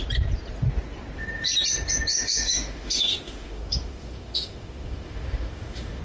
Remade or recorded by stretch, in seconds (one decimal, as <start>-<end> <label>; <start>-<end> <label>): 0.0-2.1 recorded; 2.1-6.0 remade